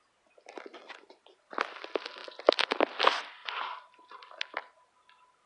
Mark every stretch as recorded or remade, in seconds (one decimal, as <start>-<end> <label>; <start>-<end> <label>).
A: 0.0-5.5 recorded